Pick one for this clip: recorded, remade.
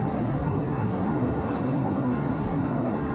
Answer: remade